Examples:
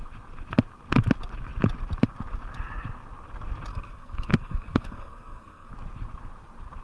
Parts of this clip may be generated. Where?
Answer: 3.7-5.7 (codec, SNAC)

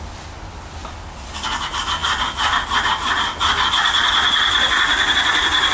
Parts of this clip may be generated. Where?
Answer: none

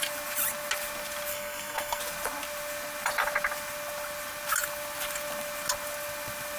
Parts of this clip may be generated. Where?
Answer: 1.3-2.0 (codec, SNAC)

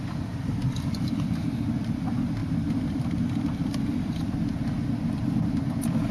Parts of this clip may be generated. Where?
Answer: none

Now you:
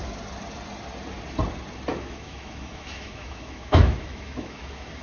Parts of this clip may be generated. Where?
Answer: 1.9-5.0 (autoencoder, DAC-VAE)